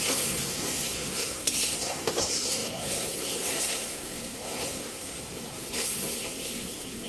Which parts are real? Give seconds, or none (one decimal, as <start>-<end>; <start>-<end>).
none